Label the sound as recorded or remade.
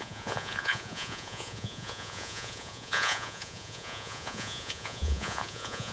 remade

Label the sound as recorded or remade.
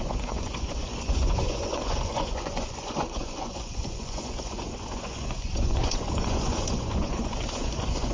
remade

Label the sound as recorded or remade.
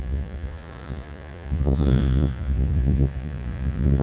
remade